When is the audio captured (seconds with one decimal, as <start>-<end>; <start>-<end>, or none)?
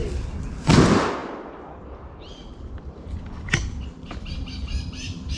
0.0-1.2; 2.0-2.4; 4.8-5.4